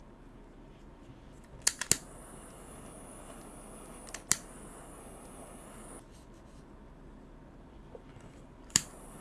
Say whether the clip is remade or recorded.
recorded